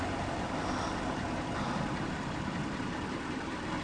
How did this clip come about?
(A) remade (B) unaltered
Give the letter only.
B